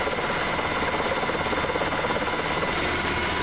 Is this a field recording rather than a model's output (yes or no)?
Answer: yes